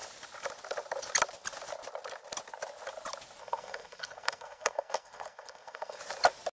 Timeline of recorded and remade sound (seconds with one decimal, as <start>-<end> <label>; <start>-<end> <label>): 0.0-3.4 recorded; 3.4-6.0 remade; 6.0-6.5 recorded

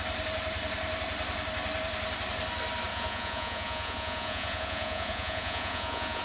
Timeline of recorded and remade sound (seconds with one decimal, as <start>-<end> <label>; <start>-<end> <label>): 0.0-2.9 recorded; 2.9-6.2 remade

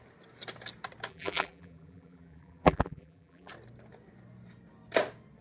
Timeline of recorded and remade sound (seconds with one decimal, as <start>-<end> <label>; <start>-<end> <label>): 0.0-1.1 recorded; 1.1-3.5 remade; 3.5-5.4 recorded

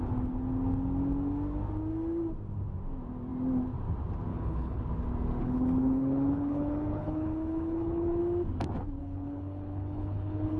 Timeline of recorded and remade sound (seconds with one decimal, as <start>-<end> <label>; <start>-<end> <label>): 0.0-4.3 recorded; 4.3-4.8 remade; 4.8-5.4 recorded; 5.4-8.2 remade; 8.2-9.0 recorded; 9.0-10.6 remade